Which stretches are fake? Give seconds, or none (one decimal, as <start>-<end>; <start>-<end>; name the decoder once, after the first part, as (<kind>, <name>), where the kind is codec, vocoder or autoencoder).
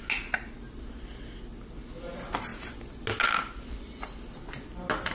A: none